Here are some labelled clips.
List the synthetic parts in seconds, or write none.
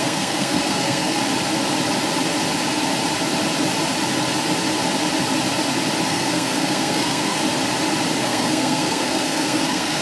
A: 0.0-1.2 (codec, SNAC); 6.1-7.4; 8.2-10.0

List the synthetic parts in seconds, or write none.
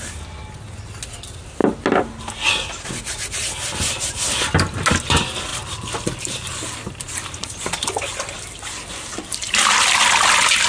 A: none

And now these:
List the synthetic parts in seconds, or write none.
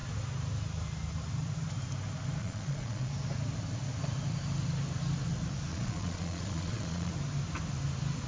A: 2.4-3.1 (vocoder, Vocos); 5.7-7.1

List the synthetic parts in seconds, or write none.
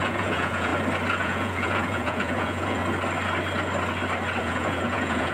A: 0.0-0.7 (vocoder, Vocos); 1.2-2.8; 4.4-5.3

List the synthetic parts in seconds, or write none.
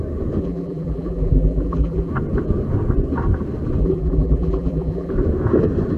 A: 0.4-2.1 (vocoder, BigVGAN v2); 3.8-5.1